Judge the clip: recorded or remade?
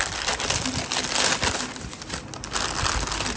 recorded